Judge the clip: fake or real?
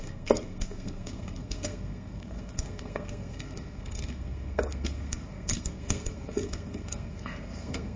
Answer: fake